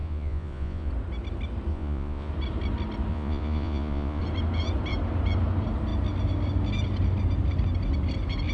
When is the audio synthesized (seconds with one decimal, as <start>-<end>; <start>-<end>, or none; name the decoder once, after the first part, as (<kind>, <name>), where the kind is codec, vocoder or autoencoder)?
0.0-0.9 (vocoder, Vocos); 1.7-2.3; 3.1-4.2